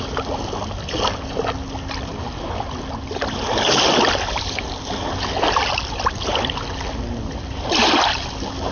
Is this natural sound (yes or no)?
yes